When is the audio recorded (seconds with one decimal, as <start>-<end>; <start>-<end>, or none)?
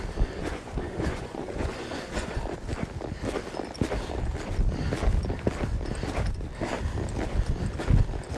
0.0-0.4; 2.4-8.4